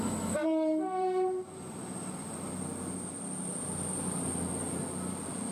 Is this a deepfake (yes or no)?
no